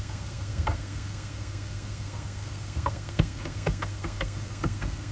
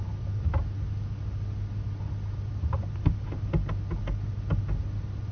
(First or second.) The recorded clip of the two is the second